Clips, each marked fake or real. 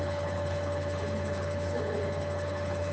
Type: fake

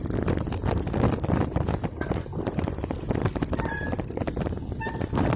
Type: real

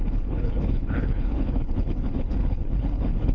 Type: fake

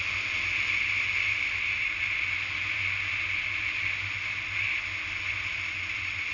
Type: real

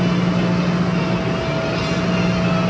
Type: real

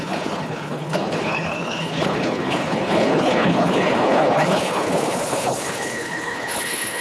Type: fake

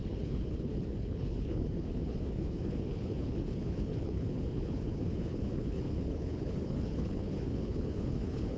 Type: fake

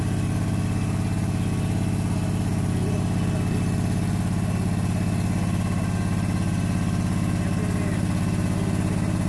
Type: real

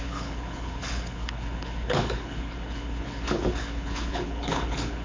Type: fake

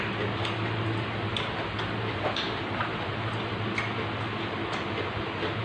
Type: real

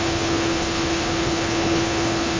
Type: fake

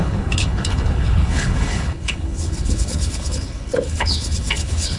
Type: fake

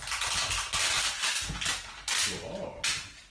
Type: real